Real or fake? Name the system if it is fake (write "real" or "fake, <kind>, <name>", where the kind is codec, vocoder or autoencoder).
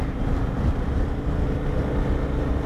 real